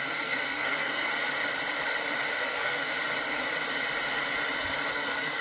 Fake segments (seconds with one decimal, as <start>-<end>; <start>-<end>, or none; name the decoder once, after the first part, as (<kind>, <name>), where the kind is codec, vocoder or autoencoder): 0.0-1.1 (codec, SNAC); 2.4-2.9; 4.9-5.4